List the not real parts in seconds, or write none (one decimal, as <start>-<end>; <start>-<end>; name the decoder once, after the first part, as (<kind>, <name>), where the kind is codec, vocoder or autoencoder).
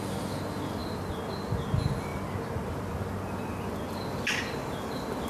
2.1-2.8 (vocoder, BigVGAN v2)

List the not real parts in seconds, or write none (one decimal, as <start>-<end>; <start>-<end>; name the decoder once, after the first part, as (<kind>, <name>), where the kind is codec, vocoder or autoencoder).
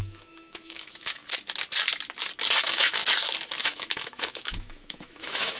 0.0-1.2 (autoencoder, DAC-VAE); 2.6-3.0; 3.6-5.6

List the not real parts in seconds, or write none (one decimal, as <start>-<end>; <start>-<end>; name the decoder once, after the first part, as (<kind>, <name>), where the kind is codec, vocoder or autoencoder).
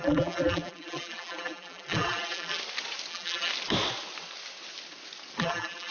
0.0-2.6 (vocoder, BigVGAN v2); 3.1-3.5; 5.4-5.9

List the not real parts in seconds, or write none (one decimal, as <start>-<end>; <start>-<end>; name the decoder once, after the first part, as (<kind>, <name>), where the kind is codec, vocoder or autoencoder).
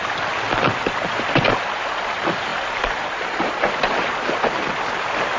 2.5-3.7 (vocoder, BigVGAN v2)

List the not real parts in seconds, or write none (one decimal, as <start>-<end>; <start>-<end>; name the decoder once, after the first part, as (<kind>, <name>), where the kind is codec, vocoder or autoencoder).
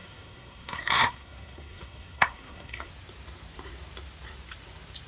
0.0-2.9 (codec, SNAC)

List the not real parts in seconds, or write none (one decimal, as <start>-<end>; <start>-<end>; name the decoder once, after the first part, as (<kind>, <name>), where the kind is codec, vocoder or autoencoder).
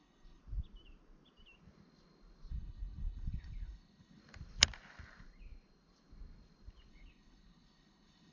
0.0-0.4 (codec, HILCodec); 2.5-4.2; 6.9-8.3